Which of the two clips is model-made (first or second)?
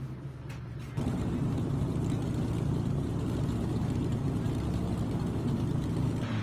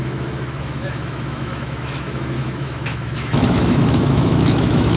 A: second